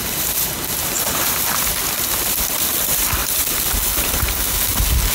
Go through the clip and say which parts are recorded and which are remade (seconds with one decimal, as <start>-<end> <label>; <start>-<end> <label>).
0.0-5.1 recorded